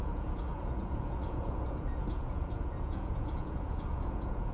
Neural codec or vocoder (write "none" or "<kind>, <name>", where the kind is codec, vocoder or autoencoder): vocoder, Vocos